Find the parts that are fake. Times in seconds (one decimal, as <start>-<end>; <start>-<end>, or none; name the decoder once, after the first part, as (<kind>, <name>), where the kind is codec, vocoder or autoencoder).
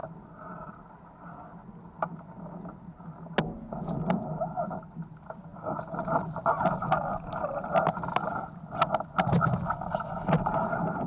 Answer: 0.0-1.3 (vocoder, BigVGAN v2)